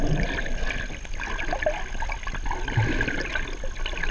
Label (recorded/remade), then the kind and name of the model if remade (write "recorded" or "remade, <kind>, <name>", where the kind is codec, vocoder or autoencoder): recorded